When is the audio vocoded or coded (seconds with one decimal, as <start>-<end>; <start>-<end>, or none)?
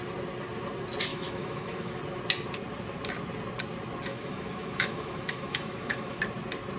1.1-2.0; 4.1-6.2